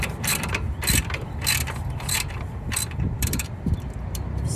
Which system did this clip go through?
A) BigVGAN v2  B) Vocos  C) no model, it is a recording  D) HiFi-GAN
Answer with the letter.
A